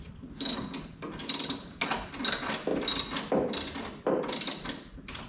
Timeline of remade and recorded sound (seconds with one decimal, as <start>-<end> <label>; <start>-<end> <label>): 0.0-5.3 recorded